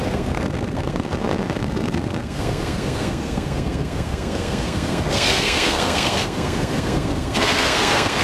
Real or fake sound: fake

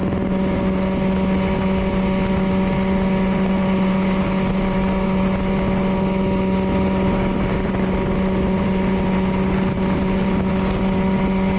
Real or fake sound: real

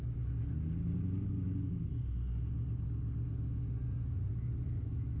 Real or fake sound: real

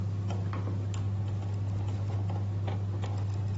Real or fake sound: real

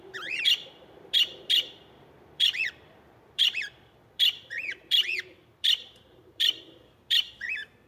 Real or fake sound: fake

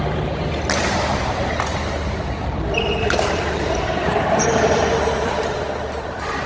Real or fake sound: fake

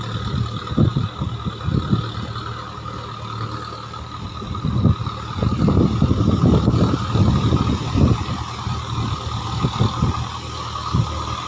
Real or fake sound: real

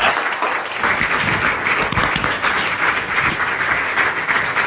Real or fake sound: real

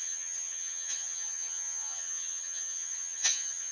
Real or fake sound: fake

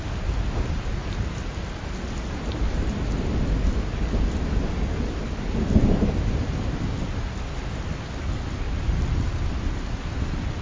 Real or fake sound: real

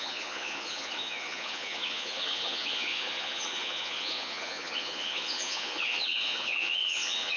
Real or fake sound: fake